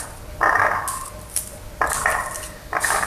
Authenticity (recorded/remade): recorded